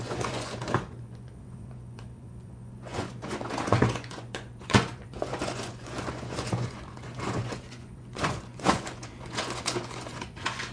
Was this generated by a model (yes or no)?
yes